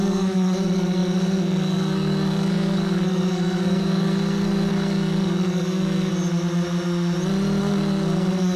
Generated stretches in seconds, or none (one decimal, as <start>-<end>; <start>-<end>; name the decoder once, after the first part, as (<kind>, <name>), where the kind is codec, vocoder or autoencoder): 0.0-6.1 (codec, SNAC); 7.6-8.6